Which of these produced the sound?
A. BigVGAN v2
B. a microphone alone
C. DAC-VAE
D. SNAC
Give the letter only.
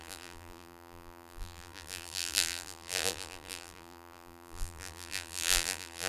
A